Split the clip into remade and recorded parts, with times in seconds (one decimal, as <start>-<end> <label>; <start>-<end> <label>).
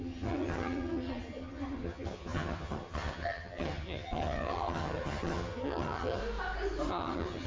0.0-6.2 remade; 6.2-6.9 recorded; 6.9-7.5 remade